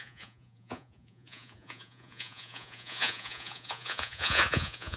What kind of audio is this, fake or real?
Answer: fake